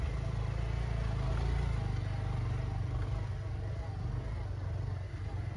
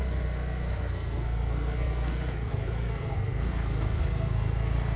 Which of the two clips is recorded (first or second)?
first